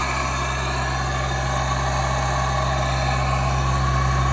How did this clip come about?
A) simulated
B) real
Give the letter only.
B